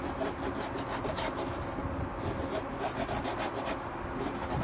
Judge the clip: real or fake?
real